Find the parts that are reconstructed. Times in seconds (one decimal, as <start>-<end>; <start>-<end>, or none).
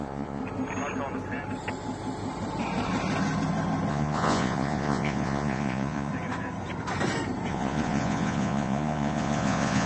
0.0-0.4; 3.9-6.1; 7.5-9.9